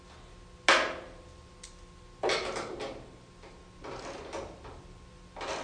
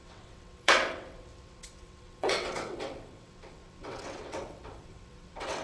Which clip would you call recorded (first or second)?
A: first